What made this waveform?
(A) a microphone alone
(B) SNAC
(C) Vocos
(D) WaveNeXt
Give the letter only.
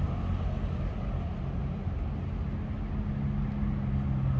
A